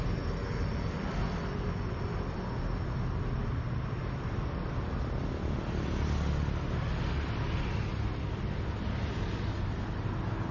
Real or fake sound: real